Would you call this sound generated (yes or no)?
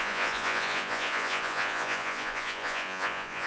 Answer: yes